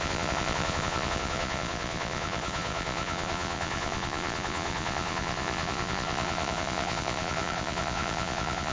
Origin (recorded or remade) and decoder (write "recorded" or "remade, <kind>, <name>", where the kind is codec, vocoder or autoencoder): remade, vocoder, Vocos